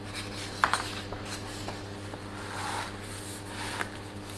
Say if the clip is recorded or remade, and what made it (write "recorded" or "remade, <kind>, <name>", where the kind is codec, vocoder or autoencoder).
recorded